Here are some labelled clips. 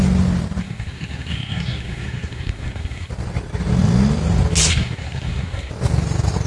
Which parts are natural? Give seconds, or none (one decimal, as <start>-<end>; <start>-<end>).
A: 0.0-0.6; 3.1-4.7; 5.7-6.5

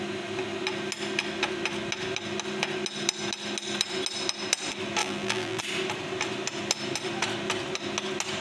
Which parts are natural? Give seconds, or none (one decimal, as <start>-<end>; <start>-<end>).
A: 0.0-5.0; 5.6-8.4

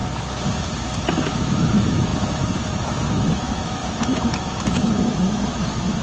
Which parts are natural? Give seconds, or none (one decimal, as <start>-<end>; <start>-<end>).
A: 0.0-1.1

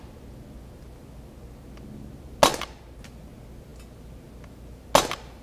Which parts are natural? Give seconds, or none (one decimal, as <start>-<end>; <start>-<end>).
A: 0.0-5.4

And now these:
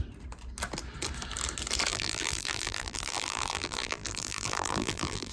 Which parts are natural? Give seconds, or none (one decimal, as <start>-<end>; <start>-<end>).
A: 0.0-1.9